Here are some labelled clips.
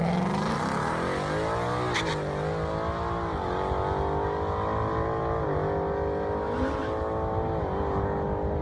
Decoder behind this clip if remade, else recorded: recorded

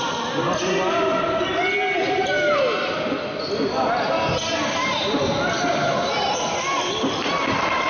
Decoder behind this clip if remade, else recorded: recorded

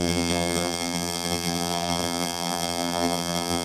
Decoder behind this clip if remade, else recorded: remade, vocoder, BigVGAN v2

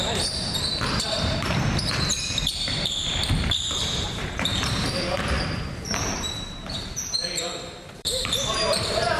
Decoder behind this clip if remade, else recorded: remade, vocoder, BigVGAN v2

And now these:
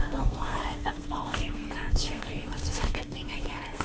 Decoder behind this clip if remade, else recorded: remade, codec, SNAC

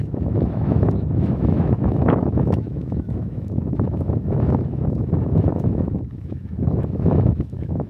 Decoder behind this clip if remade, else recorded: remade, autoencoder, DAC-VAE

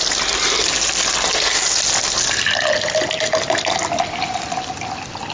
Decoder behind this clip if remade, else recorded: recorded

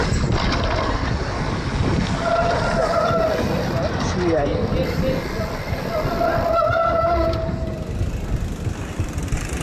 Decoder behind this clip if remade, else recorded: recorded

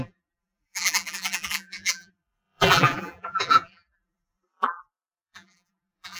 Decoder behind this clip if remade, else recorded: remade, vocoder, BigVGAN v2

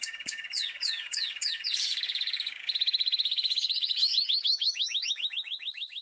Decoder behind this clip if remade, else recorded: remade, codec, DAC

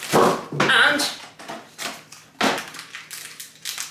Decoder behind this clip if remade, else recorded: recorded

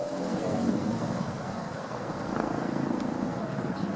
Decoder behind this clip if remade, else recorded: remade, codec, SNAC